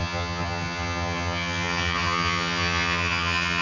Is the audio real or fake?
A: fake